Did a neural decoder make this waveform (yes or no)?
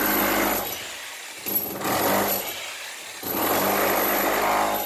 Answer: no